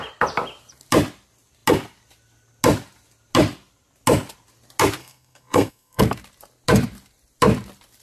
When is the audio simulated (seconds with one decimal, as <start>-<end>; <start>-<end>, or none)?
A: 5.0-6.0